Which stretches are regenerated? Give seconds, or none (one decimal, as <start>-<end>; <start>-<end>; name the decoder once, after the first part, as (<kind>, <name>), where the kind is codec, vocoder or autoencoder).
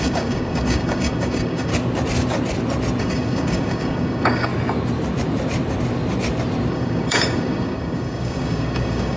0.0-1.7 (codec, DAC); 3.0-4.5; 6.7-9.2